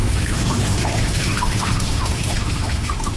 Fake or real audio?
fake